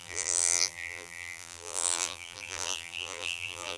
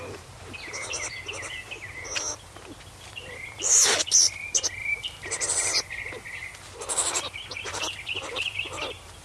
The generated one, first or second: first